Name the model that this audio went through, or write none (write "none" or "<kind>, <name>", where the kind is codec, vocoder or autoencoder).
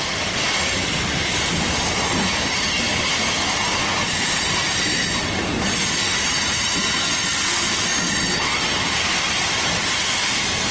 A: none